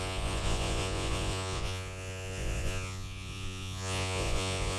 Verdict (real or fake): fake